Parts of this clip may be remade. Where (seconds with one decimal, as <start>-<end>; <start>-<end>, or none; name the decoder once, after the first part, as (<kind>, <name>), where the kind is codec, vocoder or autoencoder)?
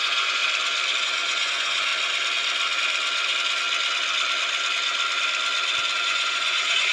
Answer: 0.0-0.4 (vocoder, Vocos); 1.0-1.9; 6.0-6.9